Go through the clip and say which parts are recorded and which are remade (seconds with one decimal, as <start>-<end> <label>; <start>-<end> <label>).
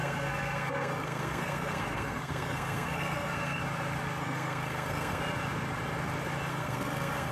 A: 0.0-3.6 remade; 3.6-4.2 recorded; 4.2-5.2 remade; 5.2-6.5 recorded; 6.5-7.3 remade